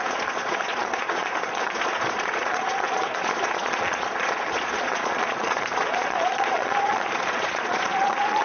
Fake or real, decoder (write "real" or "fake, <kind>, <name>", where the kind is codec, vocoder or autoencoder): fake, vocoder, Vocos